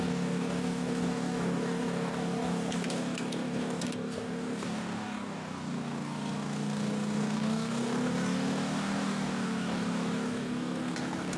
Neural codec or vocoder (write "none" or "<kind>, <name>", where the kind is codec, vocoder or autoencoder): codec, DAC